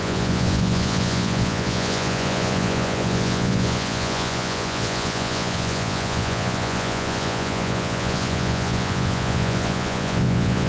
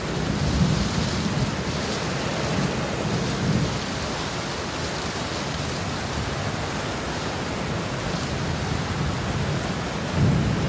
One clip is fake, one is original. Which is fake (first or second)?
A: first